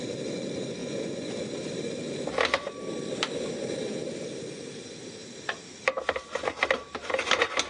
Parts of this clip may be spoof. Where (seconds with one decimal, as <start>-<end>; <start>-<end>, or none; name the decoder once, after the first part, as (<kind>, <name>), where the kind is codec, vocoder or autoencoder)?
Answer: 0.8-1.3 (vocoder, Vocos)